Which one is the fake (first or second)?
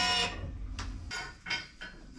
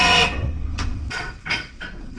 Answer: second